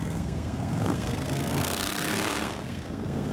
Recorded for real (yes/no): no